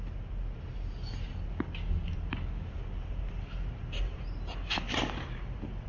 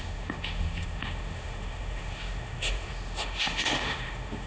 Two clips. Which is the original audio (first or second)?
first